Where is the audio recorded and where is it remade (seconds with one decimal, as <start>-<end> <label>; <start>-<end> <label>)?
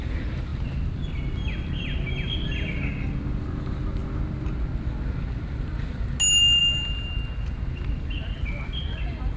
0.0-8.2 recorded; 8.2-9.4 remade